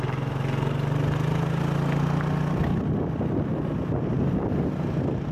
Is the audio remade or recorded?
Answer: recorded